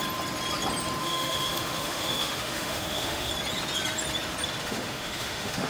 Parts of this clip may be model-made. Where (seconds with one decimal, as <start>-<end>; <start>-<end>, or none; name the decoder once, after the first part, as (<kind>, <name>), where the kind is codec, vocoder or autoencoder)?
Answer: 1.0-3.3 (autoencoder, DAC-VAE); 4.6-5.7

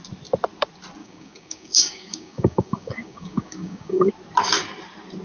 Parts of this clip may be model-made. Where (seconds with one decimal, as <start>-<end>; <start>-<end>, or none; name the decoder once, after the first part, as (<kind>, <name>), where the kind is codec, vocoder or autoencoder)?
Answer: 1.0-4.1 (codec, DAC)

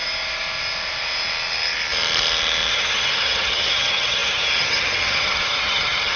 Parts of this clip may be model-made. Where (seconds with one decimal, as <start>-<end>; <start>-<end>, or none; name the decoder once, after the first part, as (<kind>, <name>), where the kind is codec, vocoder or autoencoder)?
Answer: 2.7-6.2 (vocoder, HiFi-GAN)

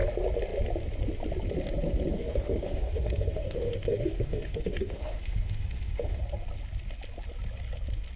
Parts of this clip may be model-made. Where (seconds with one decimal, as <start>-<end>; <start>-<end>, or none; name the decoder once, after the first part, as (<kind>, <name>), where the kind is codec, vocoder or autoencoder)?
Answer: 2.1-6.2 (autoencoder, DAC-VAE)

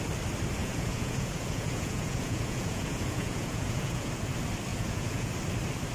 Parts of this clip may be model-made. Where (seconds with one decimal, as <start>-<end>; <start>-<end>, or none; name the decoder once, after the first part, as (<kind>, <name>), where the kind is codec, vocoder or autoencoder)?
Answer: 0.6-4.1 (vocoder, Vocos); 4.7-5.3

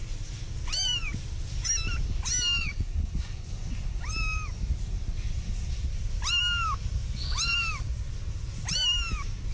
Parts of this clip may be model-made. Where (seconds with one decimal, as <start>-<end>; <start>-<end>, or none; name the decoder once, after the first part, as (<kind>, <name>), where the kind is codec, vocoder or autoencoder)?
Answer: 2.6-4.0 (vocoder, Vocos)